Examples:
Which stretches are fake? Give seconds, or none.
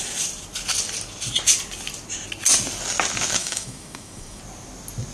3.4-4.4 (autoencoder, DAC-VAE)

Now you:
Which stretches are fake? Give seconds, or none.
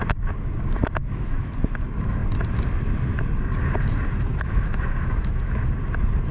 1.0-1.5 (autoencoder, DAC-VAE); 4.3-5.6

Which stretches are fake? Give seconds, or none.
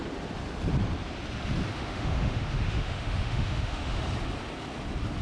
1.7-4.0 (autoencoder, DAC-VAE)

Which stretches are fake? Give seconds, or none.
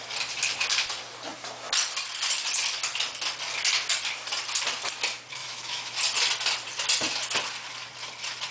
5.4-6.0 (autoencoder, DAC-VAE)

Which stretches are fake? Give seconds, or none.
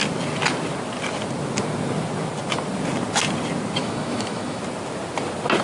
3.8-4.6 (autoencoder, DAC-VAE)